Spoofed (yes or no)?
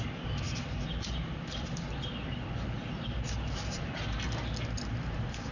no